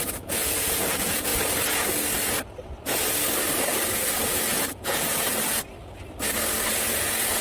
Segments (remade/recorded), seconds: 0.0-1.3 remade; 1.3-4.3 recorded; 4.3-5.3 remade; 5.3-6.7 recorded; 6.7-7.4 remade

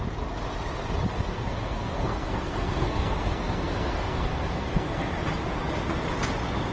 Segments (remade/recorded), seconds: 0.0-1.1 recorded; 1.1-5.1 remade; 5.1-6.7 recorded

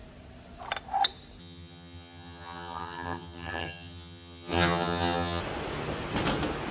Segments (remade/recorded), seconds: 0.0-1.4 recorded; 1.4-5.4 remade; 5.4-6.7 recorded

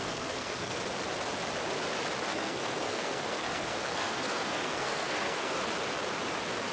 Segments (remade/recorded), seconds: 0.0-0.8 remade; 0.8-2.3 recorded; 2.3-5.7 remade; 5.7-6.7 recorded

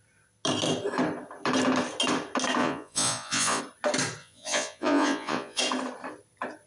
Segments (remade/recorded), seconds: 0.0-2.6 recorded; 2.6-3.6 remade; 3.6-4.2 recorded; 4.2-5.6 remade; 5.6-6.7 recorded

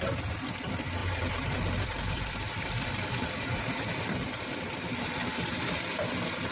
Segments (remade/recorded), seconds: 0.0-1.0 recorded; 1.0-4.9 remade; 4.9-6.5 recorded

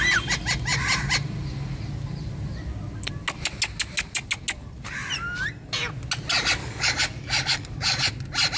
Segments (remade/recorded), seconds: 0.0-6.6 recorded; 6.6-8.1 remade; 8.1-8.6 recorded